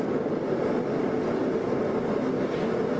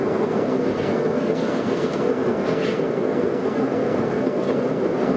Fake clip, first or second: second